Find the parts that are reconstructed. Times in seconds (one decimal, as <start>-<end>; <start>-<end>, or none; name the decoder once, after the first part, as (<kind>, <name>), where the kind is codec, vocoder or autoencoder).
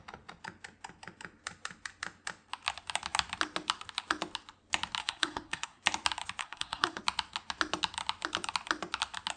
5.0-5.8 (codec, SNAC); 6.4-7.0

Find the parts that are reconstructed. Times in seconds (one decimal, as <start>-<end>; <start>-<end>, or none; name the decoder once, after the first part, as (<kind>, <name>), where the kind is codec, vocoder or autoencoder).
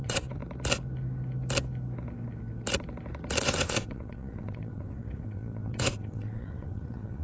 0.0-0.4 (vocoder, WaveNeXt); 3.4-7.2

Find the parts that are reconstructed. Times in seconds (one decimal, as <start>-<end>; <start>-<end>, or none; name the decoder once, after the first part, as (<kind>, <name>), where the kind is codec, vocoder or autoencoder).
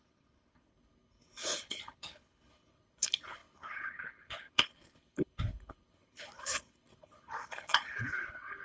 0.0-8.6 (codec, HILCodec)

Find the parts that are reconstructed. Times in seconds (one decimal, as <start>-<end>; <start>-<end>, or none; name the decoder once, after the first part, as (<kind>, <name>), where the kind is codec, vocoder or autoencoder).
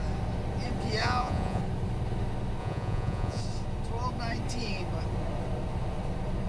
1.0-1.6 (vocoder, Vocos); 2.6-3.4